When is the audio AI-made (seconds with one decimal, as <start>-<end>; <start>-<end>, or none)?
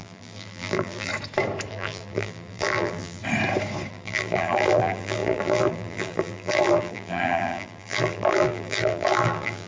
0.0-1.1; 1.7-3.2; 3.9-9.7